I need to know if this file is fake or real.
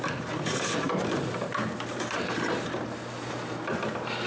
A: real